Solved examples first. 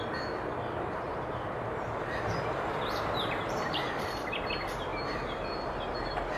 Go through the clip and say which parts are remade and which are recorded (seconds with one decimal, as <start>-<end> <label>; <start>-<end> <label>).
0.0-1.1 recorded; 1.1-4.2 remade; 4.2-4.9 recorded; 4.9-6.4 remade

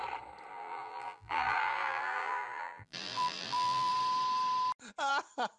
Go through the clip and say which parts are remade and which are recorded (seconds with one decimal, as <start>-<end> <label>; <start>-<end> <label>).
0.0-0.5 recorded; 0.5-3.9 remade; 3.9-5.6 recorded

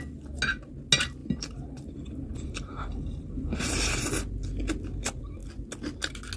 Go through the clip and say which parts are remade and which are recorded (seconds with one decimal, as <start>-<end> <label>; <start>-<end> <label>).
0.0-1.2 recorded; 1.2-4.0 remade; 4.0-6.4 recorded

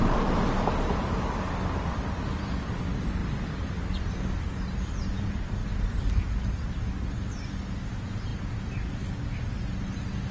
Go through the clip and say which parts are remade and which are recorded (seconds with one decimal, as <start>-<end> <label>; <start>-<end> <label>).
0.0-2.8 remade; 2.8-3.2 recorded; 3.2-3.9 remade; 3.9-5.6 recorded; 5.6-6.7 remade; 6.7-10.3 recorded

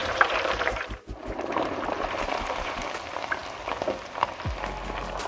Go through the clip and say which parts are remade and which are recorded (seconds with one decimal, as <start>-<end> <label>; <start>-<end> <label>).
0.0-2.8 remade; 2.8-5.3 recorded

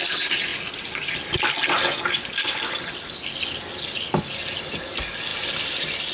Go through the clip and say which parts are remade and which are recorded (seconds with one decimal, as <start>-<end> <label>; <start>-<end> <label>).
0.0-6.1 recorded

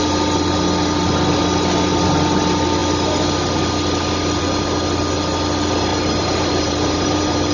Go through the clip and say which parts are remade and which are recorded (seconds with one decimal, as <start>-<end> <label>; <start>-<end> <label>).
0.0-5.9 recorded; 5.9-7.5 remade